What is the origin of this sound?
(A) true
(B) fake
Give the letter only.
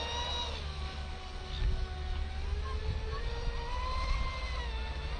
A